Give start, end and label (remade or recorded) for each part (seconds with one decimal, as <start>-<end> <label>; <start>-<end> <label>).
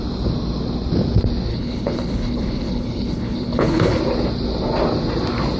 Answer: 0.0-1.5 recorded; 1.5-4.0 remade; 4.0-5.6 recorded